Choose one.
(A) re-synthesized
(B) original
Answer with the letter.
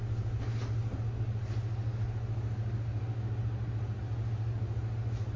B